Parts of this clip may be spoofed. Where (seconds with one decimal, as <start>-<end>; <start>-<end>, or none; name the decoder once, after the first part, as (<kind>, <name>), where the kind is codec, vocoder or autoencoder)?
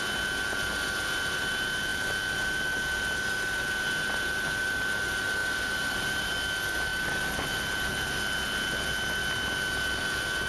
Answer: 5.4-6.3 (vocoder, BigVGAN v2)